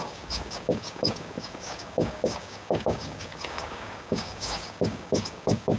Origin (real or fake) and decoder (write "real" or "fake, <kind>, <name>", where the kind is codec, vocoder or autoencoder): fake, codec, DAC